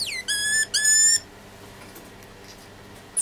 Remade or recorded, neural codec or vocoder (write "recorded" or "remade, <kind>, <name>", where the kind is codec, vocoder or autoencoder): recorded